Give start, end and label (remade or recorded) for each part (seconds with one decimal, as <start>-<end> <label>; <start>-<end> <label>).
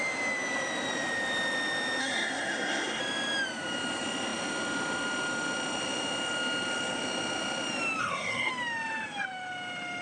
0.0-2.0 recorded; 2.0-3.0 remade; 3.0-8.0 recorded; 8.0-8.5 remade; 8.5-10.0 recorded